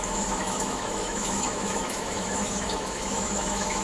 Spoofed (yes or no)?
yes